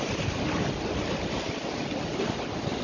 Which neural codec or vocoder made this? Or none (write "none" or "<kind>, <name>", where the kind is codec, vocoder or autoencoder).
none